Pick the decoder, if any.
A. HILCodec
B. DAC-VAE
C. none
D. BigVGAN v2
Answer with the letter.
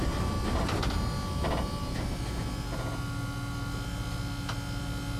C